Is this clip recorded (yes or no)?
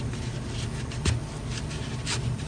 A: yes